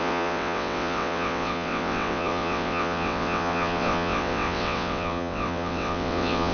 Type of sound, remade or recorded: remade